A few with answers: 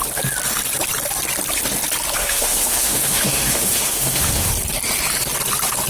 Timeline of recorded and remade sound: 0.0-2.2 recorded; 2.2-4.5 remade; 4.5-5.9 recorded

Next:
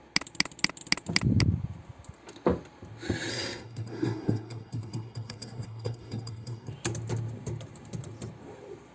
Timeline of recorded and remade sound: 0.0-3.3 recorded; 3.3-6.7 remade; 6.7-8.9 recorded

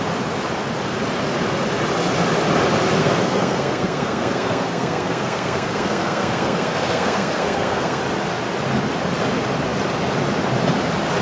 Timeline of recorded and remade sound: 0.0-3.0 recorded; 3.0-8.0 remade; 8.0-11.2 recorded